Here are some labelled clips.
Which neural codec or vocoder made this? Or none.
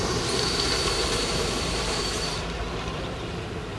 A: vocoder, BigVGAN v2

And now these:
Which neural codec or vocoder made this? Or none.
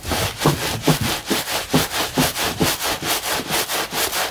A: vocoder, BigVGAN v2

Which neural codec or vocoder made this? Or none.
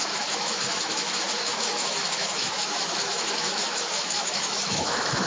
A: autoencoder, DAC-VAE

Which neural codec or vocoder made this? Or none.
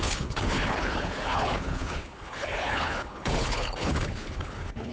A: codec, HILCodec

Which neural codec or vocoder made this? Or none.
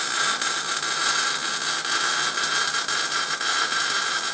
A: none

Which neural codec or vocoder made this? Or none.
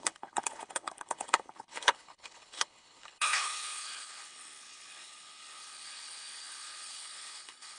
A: codec, HILCodec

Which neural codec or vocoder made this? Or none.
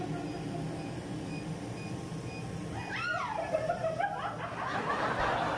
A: none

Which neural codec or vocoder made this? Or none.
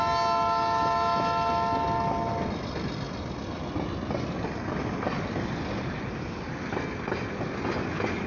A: none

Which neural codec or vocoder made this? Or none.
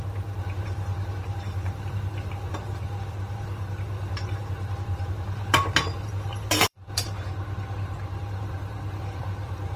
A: vocoder, BigVGAN v2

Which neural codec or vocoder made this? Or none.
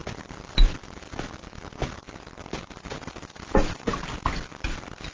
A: none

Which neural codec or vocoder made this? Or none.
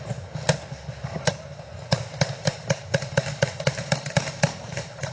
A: vocoder, BigVGAN v2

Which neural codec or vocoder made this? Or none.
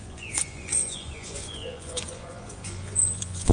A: vocoder, Vocos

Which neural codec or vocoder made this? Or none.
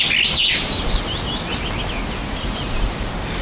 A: none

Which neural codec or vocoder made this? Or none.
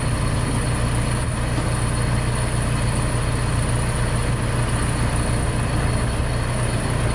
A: none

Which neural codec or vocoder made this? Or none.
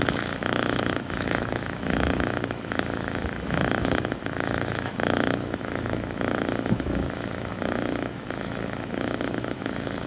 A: autoencoder, DAC-VAE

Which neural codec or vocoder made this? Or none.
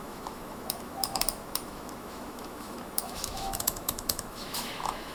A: autoencoder, DAC-VAE